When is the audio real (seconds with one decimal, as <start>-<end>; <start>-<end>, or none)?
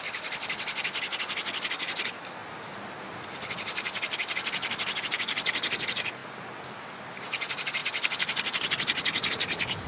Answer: 0.0-9.9